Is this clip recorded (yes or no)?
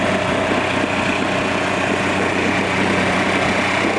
no